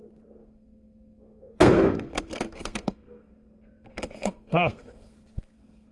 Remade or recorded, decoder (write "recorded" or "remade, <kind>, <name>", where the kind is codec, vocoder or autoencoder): remade, codec, SNAC